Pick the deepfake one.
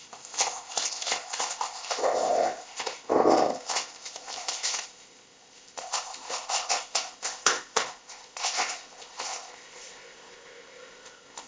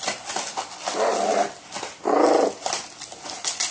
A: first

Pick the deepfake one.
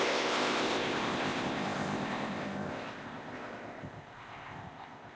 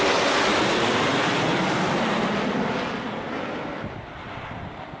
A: first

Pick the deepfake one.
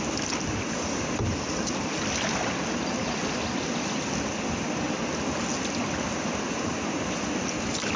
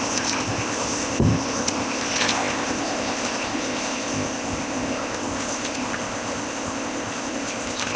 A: second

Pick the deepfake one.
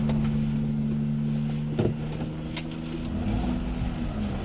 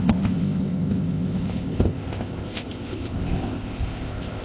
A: second